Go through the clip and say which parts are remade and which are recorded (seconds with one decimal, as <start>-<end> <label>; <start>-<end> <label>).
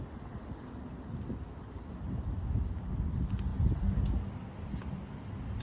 0.0-5.6 recorded